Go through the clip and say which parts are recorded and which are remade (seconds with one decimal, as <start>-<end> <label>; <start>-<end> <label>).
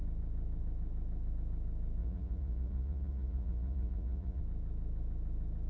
0.0-2.0 recorded; 2.0-4.4 remade; 4.4-5.7 recorded